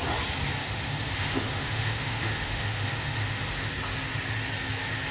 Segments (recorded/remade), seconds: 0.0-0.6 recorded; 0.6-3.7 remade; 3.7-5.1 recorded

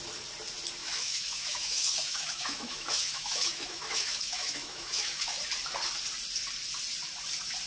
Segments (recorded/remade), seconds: 0.0-0.8 recorded; 0.8-5.4 remade; 5.4-7.7 recorded

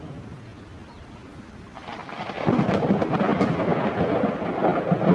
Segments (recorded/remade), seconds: 0.0-5.1 recorded

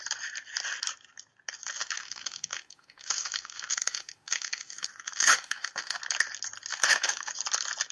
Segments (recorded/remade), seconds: 0.0-1.8 recorded; 1.8-6.0 remade; 6.0-6.7 recorded; 6.7-7.3 remade; 7.3-7.9 recorded

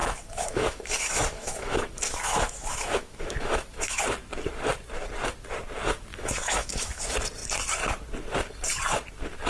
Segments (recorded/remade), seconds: 0.0-4.0 remade; 4.0-6.1 recorded; 6.1-7.0 remade; 7.0-9.5 recorded

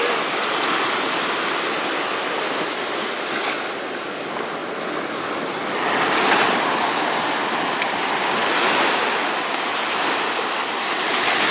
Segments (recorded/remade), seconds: 0.0-11.5 recorded

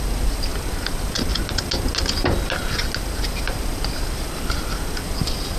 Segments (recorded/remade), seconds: 0.0-5.6 recorded